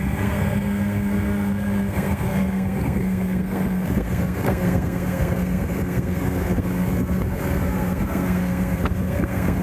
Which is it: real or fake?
fake